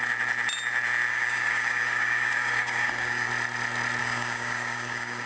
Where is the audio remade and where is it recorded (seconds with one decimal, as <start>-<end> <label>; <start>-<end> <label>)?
0.0-1.1 recorded; 1.1-3.3 remade; 3.3-4.0 recorded; 4.0-5.3 remade